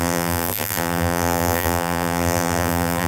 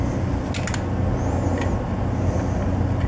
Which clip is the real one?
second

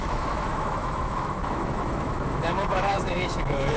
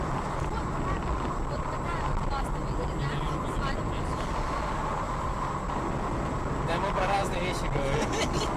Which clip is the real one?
second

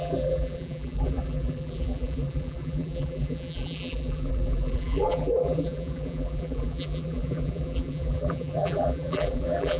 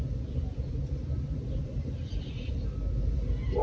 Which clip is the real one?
second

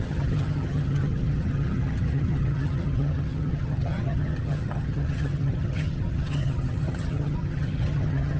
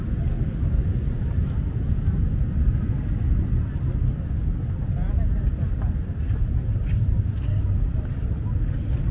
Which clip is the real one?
second